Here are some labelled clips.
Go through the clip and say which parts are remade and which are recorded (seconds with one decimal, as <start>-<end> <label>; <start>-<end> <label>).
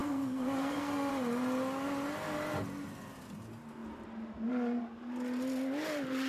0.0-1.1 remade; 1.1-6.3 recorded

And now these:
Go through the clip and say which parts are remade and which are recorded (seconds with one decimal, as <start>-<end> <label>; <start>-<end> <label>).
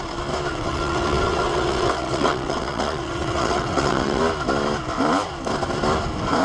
0.0-0.5 recorded; 0.5-4.2 remade; 4.2-6.4 recorded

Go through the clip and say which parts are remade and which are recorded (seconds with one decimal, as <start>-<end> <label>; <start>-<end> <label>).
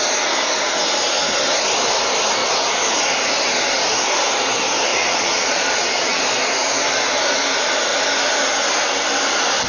0.0-4.9 recorded; 4.9-6.2 remade; 6.2-9.7 recorded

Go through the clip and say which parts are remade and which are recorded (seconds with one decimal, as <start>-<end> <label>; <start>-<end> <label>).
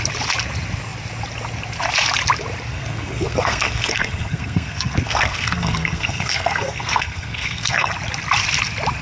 0.0-2.7 recorded; 2.7-7.9 remade; 7.9-9.0 recorded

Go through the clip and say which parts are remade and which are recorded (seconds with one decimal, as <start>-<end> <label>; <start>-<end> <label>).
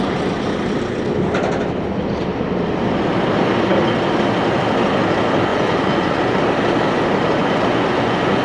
0.0-5.5 recorded; 5.5-6.4 remade; 6.4-7.4 recorded; 7.4-8.4 remade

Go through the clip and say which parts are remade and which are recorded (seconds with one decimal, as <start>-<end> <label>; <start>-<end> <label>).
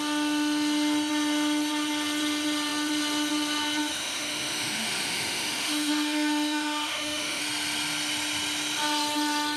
0.0-3.9 recorded; 3.9-7.4 remade; 7.4-9.6 recorded